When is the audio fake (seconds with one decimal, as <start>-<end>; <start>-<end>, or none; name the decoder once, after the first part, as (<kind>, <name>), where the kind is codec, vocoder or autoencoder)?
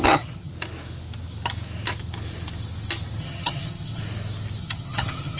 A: 0.0-0.5 (vocoder, HiFi-GAN); 3.2-4.0; 4.6-5.4